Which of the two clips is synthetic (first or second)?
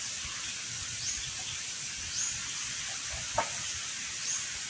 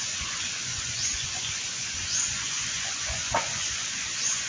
second